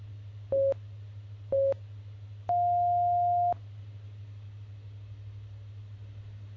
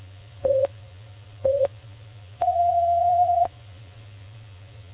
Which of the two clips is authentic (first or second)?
first